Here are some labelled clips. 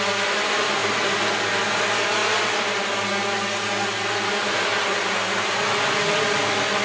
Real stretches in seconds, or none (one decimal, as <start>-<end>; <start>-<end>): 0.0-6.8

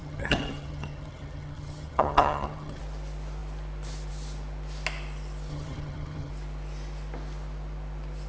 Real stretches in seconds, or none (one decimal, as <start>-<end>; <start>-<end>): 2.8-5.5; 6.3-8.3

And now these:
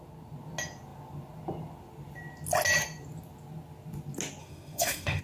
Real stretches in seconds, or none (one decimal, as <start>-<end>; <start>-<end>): 0.0-4.4

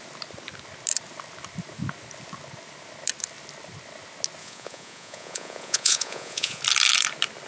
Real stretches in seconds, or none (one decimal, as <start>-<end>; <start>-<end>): 0.0-4.4; 6.6-7.5

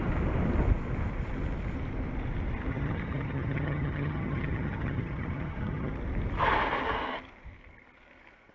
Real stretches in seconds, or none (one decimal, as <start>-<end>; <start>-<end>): 0.0-2.7; 5.9-8.5

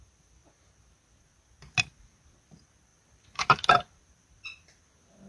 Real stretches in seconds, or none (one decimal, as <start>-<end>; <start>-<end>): 0.4-1.9

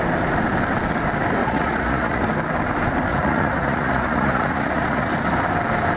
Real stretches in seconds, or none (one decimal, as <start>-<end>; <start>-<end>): 0.0-1.4; 2.2-3.1; 5.1-6.0